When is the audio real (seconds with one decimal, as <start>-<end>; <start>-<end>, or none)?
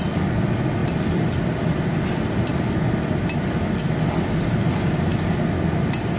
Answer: 0.0-6.2